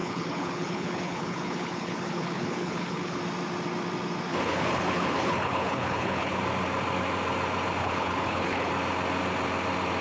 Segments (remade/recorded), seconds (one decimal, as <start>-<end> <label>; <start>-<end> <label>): 0.0-3.2 remade; 3.2-4.3 recorded; 4.3-6.4 remade; 6.4-7.8 recorded; 7.8-8.7 remade; 8.7-10.0 recorded